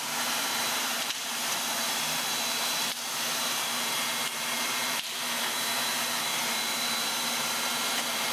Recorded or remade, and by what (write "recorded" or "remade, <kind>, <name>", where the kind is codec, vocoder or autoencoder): remade, vocoder, BigVGAN v2